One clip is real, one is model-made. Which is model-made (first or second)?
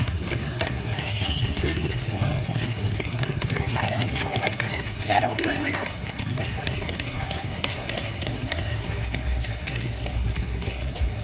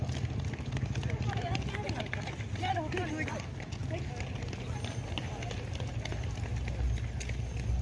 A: first